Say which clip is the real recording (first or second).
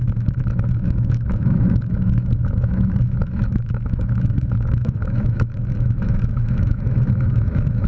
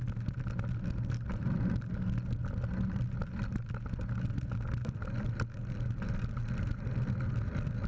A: second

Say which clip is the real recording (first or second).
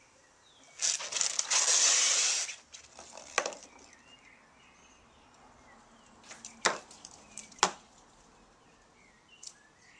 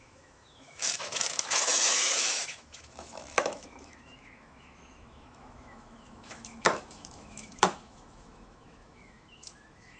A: first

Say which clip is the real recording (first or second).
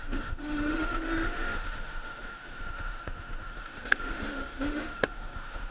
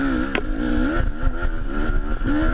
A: second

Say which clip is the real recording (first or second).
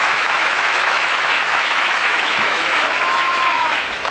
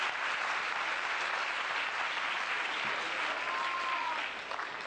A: second